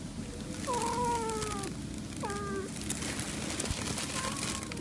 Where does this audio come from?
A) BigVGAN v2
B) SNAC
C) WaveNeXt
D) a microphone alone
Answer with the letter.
D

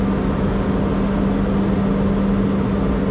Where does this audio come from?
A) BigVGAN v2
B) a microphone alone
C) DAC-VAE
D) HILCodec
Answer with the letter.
B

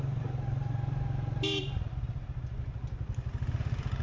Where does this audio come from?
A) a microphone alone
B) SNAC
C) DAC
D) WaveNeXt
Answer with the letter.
A